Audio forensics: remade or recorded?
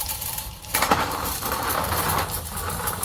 remade